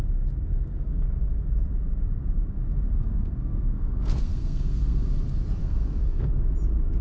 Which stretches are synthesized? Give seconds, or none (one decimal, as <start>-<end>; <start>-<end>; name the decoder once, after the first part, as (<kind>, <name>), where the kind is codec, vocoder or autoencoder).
0.5-1.3 (codec, SNAC); 3.0-5.1; 5.6-6.3